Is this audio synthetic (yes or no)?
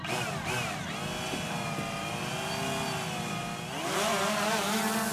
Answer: no